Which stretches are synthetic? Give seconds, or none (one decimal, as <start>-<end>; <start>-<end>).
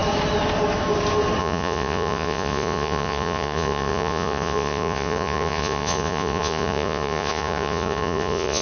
1.4-8.6